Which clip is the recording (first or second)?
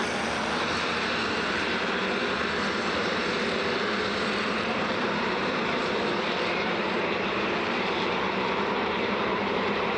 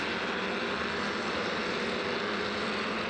second